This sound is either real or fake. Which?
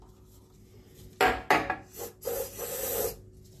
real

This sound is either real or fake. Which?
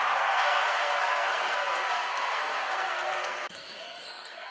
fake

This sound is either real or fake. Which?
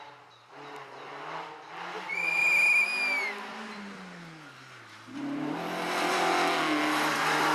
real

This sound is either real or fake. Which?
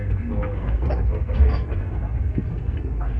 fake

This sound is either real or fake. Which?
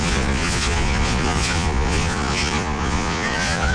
fake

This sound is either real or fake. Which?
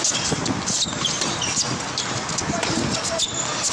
real